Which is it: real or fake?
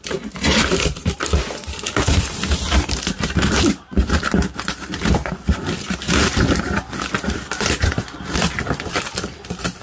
fake